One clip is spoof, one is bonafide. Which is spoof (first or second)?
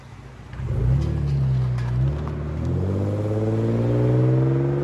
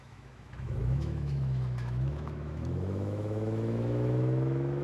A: second